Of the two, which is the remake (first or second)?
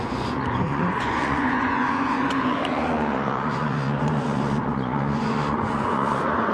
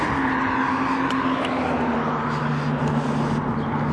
first